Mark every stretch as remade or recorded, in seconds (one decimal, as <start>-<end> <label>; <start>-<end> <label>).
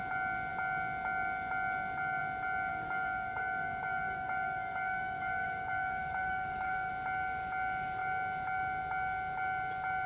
0.0-2.7 recorded; 2.7-6.9 remade; 6.9-10.1 recorded